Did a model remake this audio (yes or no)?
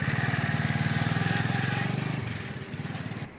no